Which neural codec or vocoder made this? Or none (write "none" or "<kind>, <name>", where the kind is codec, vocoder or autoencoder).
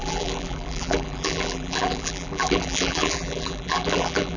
vocoder, BigVGAN v2